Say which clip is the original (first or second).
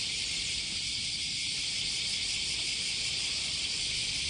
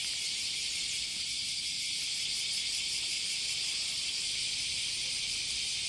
second